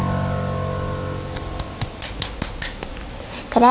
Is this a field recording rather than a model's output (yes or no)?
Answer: yes